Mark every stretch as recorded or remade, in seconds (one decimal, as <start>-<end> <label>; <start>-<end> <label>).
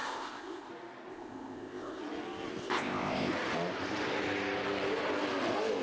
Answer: 0.0-0.7 remade; 0.7-1.1 recorded; 1.1-2.0 remade; 2.0-2.6 recorded; 2.6-3.3 remade; 3.3-5.8 recorded